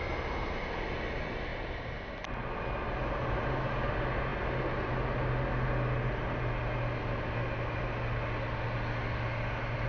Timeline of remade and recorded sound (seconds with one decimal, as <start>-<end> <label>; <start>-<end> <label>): 0.0-9.9 recorded